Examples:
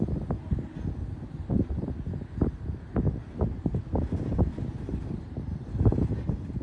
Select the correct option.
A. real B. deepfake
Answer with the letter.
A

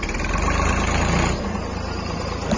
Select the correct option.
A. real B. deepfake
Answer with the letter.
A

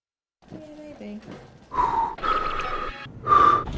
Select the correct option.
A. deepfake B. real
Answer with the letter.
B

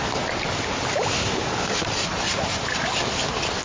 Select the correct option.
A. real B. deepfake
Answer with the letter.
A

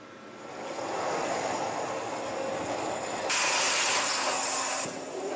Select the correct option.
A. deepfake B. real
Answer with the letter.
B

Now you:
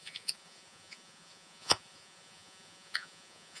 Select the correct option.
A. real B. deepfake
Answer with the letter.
B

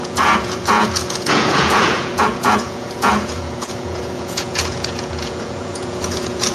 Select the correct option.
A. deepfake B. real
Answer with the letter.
A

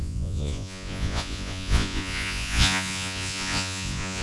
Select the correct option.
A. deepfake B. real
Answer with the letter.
A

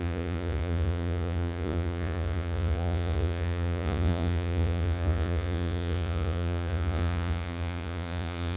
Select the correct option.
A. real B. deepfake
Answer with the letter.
B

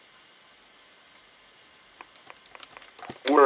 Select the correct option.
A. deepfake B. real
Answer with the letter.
B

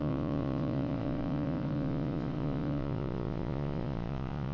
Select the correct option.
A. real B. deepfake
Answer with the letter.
B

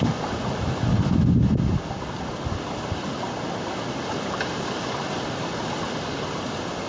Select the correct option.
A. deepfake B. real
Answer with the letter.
B